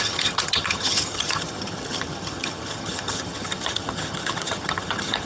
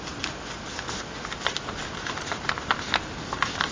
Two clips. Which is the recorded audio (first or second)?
second